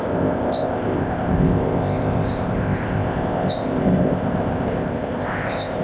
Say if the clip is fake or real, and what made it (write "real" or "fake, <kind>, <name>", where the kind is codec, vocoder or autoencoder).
fake, codec, ZipCodec